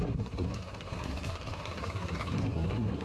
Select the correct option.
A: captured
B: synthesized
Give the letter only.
B